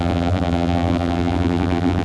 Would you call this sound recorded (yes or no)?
no